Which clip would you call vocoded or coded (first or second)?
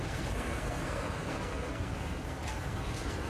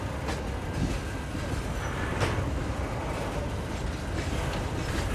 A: first